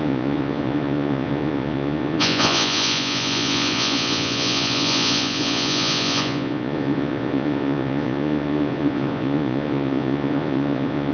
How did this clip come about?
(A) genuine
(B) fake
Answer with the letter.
B